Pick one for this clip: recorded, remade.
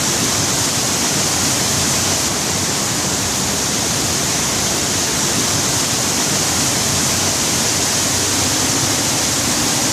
recorded